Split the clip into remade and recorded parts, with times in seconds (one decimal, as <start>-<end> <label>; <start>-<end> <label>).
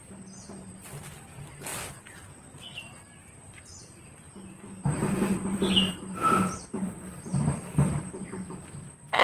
0.0-7.3 recorded; 7.3-8.0 remade; 8.0-9.2 recorded